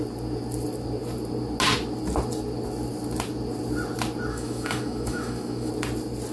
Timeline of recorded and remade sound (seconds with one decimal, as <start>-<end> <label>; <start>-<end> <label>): 0.0-4.3 recorded; 4.3-5.7 remade; 5.7-6.3 recorded